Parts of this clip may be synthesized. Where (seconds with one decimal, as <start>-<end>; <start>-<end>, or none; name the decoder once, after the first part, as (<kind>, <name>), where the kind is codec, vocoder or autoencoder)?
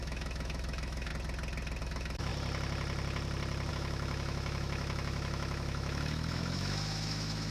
0.0-1.1 (autoencoder, DAC-VAE); 1.8-2.3; 3.7-7.5